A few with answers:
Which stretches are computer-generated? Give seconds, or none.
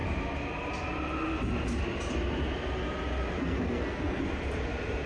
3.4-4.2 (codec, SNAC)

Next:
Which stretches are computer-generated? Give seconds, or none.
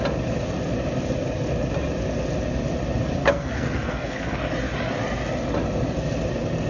3.2-4.5 (codec, SNAC)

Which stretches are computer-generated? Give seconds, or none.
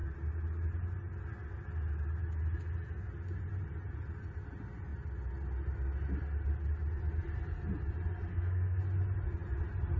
8.3-8.8 (codec, SNAC)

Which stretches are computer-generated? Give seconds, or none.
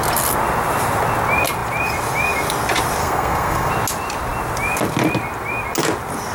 3.0-3.7 (codec, SNAC)